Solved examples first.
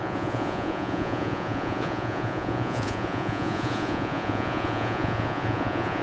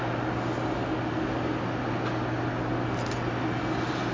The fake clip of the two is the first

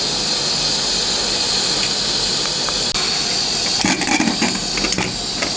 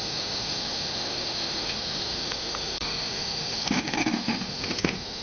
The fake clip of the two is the second